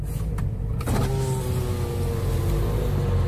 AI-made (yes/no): no